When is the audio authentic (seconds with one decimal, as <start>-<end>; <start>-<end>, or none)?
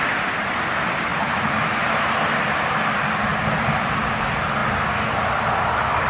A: 0.0-1.1; 2.0-3.3; 4.0-6.1